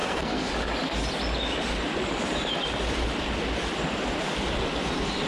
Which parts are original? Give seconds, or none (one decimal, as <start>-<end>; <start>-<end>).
0.5-5.3